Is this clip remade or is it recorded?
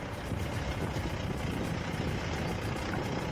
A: recorded